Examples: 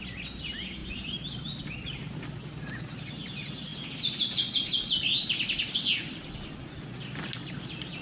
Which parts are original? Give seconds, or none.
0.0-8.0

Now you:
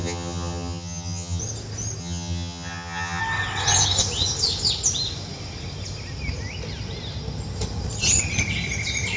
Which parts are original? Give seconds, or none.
1.4-2.0; 3.2-9.2

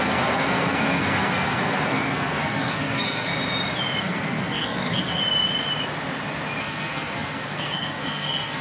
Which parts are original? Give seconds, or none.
3.3-4.0; 5.2-6.6

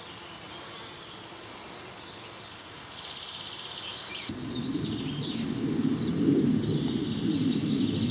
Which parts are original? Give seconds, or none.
0.0-3.9; 6.4-8.1